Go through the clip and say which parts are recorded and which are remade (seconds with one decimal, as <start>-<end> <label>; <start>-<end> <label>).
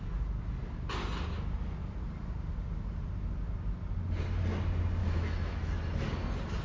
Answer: 0.0-5.0 recorded; 5.0-5.8 remade; 5.8-6.6 recorded